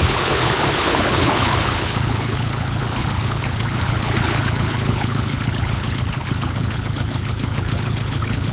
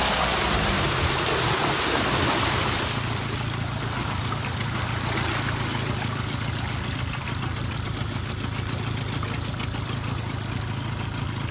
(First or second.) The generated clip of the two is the first